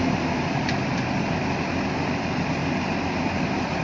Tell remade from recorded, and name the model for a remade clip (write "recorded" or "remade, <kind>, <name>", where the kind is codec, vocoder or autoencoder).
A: recorded